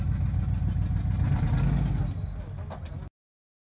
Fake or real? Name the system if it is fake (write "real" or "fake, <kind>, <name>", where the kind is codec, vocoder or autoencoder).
real